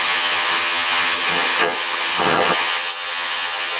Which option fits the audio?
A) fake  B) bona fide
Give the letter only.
A